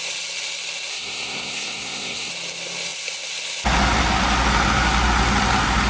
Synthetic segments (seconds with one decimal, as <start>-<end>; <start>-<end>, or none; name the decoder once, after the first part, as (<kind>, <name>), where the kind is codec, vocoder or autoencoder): 0.9-2.3 (codec, SNAC)